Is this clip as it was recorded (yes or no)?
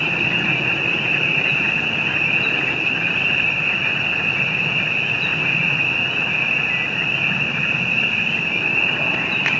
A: yes